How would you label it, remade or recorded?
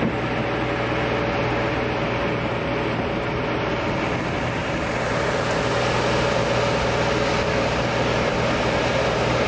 recorded